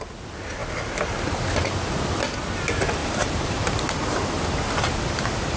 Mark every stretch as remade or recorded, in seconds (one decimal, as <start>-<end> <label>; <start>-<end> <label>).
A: 0.0-3.0 recorded; 3.0-5.6 remade